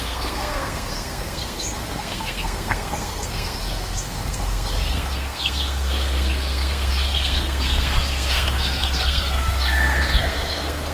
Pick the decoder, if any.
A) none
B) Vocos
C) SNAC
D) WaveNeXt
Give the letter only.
C